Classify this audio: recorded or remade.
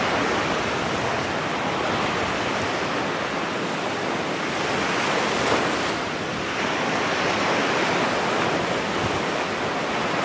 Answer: recorded